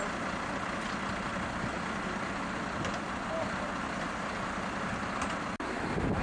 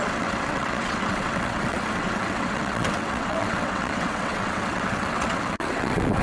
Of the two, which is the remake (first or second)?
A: second